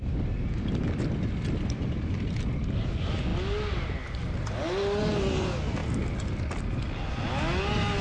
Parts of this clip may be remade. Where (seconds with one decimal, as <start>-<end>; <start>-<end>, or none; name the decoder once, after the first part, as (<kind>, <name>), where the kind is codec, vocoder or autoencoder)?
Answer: none